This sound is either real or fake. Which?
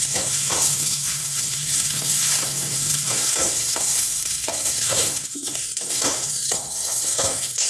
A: fake